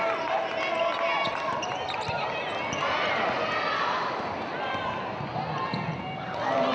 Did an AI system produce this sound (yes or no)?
no